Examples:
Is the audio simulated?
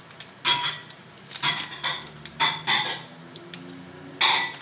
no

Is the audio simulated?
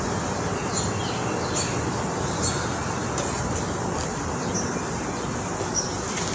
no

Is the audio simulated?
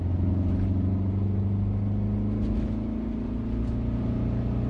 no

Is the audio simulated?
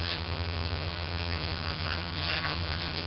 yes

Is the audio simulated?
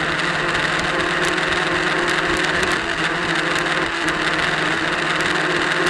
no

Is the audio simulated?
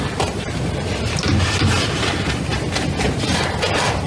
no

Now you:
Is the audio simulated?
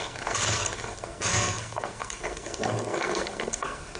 yes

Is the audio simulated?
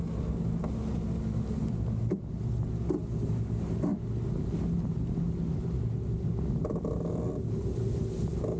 no